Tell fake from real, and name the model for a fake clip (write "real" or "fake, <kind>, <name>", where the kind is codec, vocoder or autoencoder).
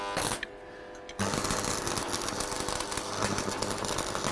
real